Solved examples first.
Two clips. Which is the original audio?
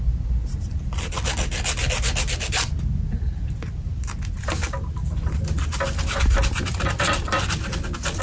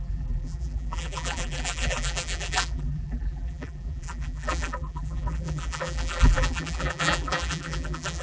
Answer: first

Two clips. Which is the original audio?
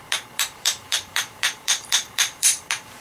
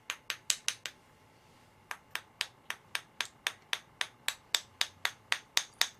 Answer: second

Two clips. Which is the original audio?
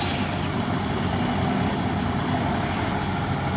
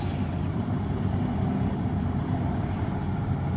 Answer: first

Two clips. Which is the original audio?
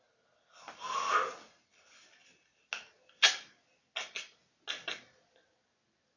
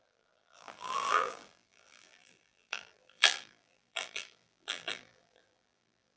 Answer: first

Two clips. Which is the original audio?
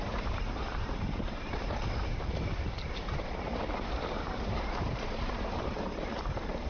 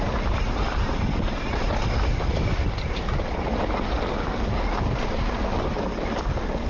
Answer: second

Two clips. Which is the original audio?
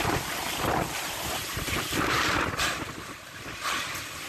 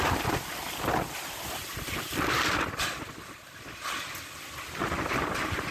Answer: second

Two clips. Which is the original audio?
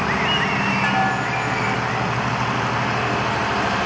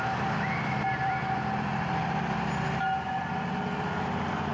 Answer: first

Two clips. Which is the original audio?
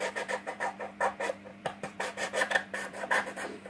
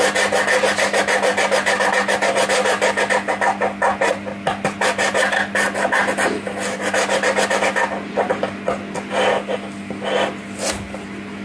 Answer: second